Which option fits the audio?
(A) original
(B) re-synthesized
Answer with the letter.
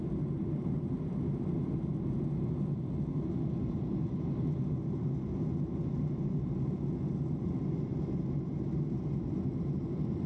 A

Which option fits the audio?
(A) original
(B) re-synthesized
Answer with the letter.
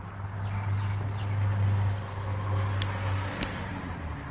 A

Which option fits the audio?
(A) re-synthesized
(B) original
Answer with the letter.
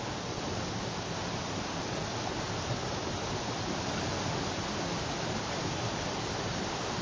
B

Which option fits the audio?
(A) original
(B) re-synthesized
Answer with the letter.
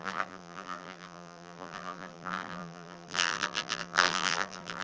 B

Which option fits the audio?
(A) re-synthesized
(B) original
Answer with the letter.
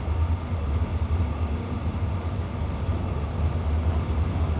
B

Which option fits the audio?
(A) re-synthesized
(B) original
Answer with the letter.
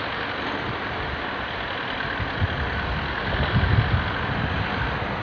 B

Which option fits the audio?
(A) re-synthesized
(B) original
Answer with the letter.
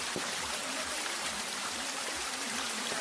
A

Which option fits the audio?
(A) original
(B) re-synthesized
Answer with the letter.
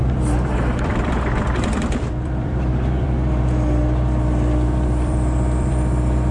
B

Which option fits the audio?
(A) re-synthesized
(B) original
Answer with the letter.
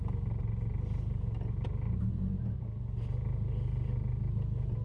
B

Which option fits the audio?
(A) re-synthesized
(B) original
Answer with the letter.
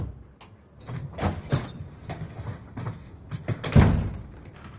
B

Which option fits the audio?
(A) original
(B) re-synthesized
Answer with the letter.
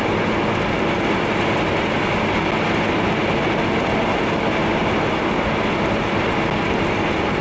A